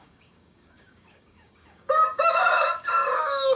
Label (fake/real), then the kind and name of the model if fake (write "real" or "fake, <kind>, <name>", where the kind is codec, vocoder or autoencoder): fake, codec, DAC